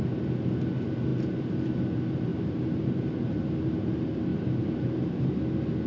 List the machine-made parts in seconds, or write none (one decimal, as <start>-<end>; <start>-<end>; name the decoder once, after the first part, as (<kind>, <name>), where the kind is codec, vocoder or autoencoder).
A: 2.3-3.4 (vocoder, BigVGAN v2); 4.3-5.4